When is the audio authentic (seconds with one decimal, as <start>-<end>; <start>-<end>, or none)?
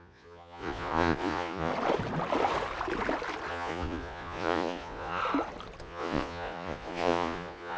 1.7-3.5; 5.2-5.8